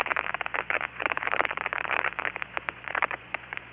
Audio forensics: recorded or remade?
remade